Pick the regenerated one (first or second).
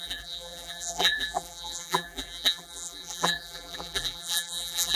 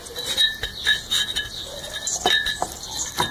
first